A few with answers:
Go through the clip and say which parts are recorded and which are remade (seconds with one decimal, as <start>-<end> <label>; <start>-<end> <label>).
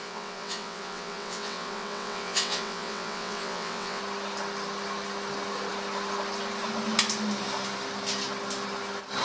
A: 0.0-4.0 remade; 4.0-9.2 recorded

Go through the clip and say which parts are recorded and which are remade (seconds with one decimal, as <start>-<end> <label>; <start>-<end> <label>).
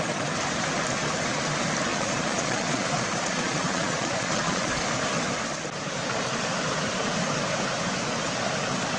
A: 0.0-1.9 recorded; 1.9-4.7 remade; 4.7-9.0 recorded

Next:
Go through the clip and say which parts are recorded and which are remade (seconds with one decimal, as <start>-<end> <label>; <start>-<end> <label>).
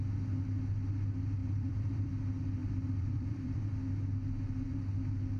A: 0.0-1.4 recorded; 1.4-2.1 remade; 2.1-2.6 recorded; 2.6-3.6 remade; 3.6-5.4 recorded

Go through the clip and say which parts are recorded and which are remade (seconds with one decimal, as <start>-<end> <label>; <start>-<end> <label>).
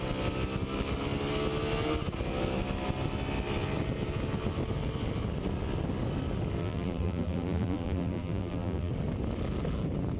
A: 0.0-6.6 recorded; 6.6-8.9 remade; 8.9-10.2 recorded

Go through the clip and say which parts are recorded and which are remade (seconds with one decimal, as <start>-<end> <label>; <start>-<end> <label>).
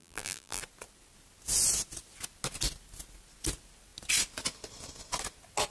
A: 0.0-0.6 remade; 0.6-5.7 recorded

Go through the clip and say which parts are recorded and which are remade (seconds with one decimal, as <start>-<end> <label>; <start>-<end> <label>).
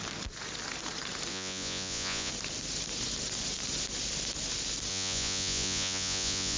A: 0.0-1.3 recorded; 1.3-2.3 remade; 2.3-4.9 recorded; 4.9-6.6 remade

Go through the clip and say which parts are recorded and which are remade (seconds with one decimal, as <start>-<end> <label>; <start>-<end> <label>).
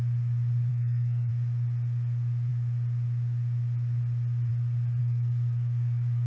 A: 0.0-0.7 recorded; 0.7-1.3 remade; 1.3-5.0 recorded; 5.0-6.3 remade